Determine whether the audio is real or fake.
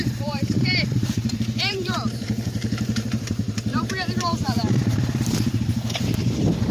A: fake